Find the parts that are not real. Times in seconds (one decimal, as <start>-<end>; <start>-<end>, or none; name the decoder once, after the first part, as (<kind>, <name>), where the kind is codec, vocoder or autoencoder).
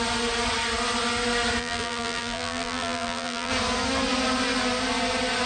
1.6-3.5 (vocoder, BigVGAN v2)